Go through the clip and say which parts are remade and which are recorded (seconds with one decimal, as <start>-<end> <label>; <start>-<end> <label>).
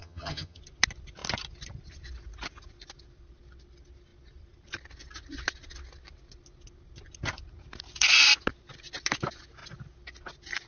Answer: 0.0-0.6 remade; 0.6-10.7 recorded